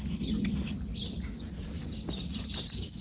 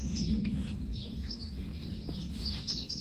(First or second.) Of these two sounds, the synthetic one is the second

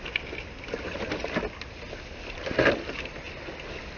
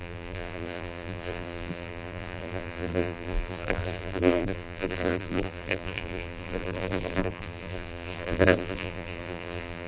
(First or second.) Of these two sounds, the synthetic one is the second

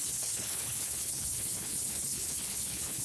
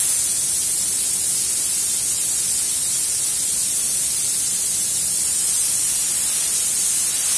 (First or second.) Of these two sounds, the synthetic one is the first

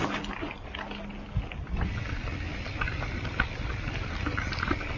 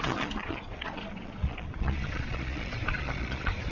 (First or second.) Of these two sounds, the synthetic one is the second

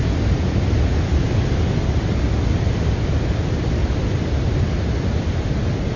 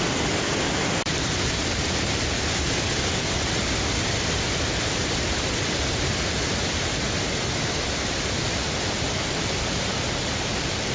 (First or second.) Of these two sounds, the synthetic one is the second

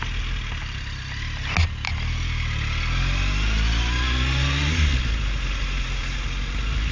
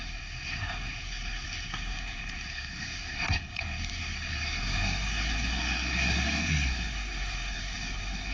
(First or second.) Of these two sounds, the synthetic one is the second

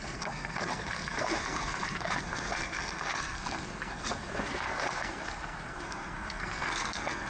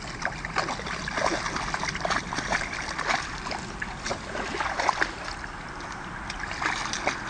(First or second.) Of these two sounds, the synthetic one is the first